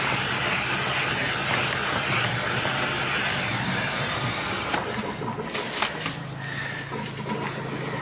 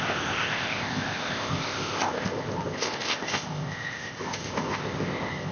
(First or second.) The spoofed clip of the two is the second